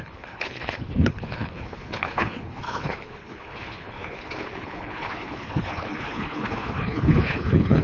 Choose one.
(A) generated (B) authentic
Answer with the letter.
A